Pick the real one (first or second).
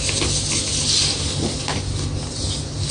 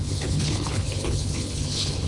first